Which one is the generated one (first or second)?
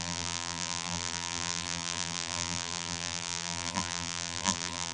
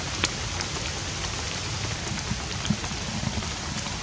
first